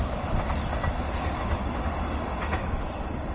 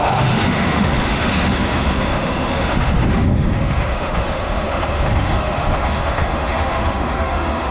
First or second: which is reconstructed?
second